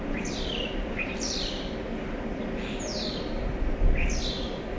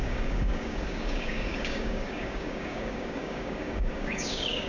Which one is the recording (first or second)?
first